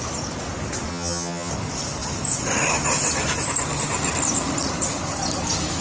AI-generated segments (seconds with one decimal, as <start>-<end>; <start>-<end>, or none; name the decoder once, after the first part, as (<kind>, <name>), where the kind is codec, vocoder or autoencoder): 0.9-1.5 (vocoder, HiFi-GAN)